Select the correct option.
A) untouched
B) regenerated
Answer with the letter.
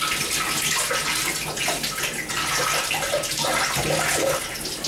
A